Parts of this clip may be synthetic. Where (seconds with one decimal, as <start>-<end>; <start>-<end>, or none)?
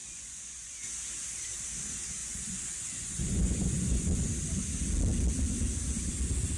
0.0-0.9; 2.2-4.1